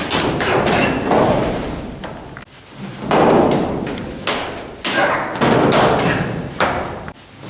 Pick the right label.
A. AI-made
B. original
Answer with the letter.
B